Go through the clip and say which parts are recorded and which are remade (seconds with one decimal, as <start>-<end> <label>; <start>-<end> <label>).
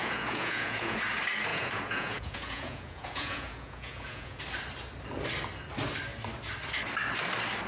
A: 0.0-1.0 remade; 1.0-1.5 recorded; 1.5-4.4 remade; 4.4-7.7 recorded